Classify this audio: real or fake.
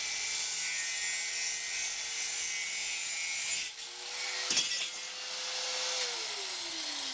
real